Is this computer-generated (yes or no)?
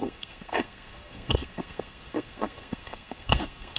yes